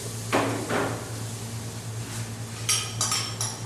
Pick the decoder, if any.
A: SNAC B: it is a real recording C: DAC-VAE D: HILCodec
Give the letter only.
B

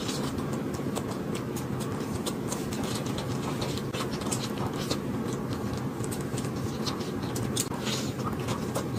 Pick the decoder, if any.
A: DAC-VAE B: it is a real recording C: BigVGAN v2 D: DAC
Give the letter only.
B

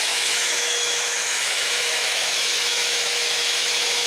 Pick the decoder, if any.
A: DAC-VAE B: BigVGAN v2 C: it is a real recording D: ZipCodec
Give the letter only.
A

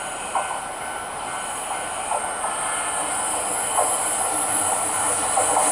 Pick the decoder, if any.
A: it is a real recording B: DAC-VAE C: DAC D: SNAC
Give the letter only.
A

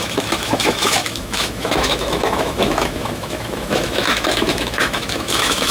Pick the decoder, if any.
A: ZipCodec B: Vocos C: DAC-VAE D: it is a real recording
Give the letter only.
C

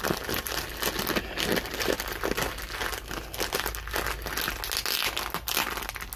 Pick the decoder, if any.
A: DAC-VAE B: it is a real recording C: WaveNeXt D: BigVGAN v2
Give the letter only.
B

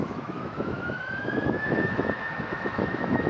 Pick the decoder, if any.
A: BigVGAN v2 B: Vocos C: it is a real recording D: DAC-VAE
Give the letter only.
D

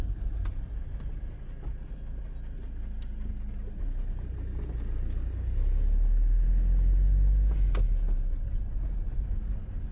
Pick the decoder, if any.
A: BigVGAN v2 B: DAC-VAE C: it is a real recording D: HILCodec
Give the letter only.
C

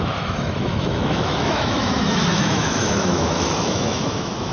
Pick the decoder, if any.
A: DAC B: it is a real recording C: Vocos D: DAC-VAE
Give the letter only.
D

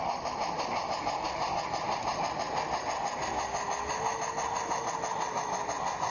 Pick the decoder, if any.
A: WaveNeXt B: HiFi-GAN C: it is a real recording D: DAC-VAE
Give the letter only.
C